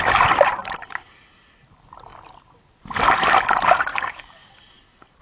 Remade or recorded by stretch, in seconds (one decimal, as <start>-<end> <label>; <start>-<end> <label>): 0.0-3.9 recorded; 3.9-4.5 remade; 4.5-5.2 recorded